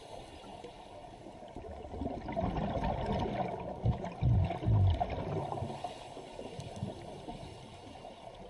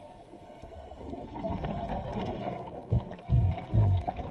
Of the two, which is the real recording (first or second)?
first